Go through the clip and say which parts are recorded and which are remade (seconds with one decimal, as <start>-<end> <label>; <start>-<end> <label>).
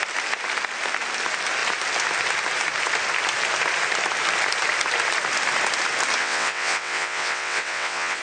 0.0-6.2 recorded; 6.2-8.2 remade